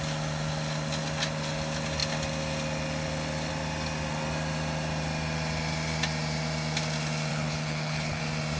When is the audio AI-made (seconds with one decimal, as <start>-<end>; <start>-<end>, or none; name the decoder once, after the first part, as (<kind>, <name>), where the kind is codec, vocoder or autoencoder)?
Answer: 7.3-8.2 (codec, HILCodec)